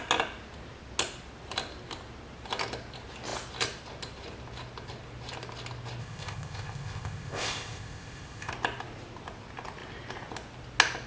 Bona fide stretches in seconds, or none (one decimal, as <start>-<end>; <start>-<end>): 0.0-6.0; 8.5-11.1